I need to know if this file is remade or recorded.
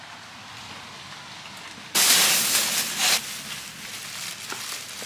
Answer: recorded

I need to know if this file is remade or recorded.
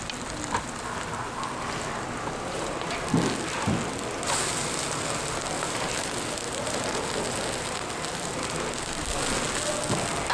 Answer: recorded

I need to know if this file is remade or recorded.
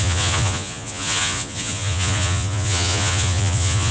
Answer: remade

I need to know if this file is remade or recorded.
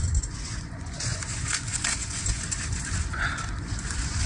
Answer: remade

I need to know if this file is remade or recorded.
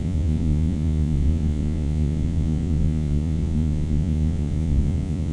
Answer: remade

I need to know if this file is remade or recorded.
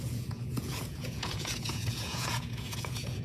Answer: remade